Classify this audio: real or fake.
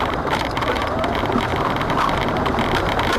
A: fake